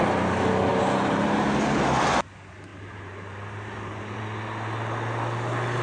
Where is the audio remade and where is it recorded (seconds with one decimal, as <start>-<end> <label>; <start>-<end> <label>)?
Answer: 0.0-0.7 recorded; 0.7-1.8 remade; 1.8-2.7 recorded; 2.7-4.2 remade; 4.2-5.8 recorded